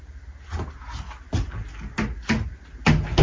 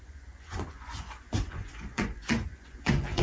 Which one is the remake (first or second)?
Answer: second